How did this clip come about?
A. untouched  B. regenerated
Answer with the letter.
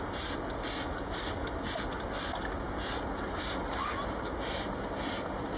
A